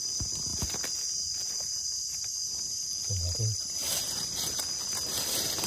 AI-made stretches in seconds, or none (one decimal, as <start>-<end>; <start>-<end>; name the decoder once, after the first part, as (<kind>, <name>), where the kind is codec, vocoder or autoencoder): 3.8-4.6 (vocoder, BigVGAN v2)